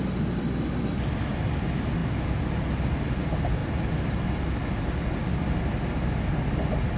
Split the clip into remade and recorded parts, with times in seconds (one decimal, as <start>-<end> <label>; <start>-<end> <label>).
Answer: 0.0-3.6 recorded; 3.6-4.5 remade; 4.5-7.0 recorded